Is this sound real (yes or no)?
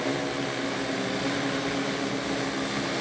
yes